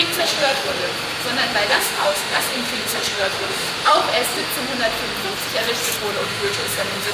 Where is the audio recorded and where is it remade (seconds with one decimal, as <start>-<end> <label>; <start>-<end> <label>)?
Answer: 0.0-0.8 remade; 0.8-1.7 recorded; 1.7-4.0 remade; 4.0-6.2 recorded; 6.2-7.1 remade

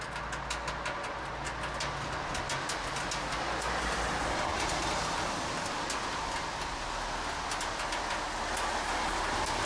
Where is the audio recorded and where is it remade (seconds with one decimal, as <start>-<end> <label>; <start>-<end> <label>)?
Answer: 0.0-4.5 recorded; 4.5-5.7 remade; 5.7-9.7 recorded

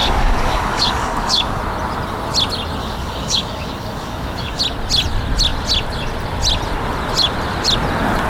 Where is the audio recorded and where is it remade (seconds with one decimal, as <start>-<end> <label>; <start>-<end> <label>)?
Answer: 0.0-1.6 remade; 1.6-2.8 recorded; 2.8-4.6 remade; 4.6-8.3 recorded